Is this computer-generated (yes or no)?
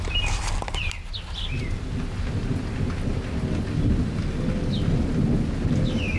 no